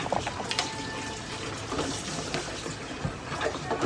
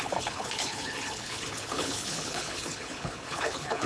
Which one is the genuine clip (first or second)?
first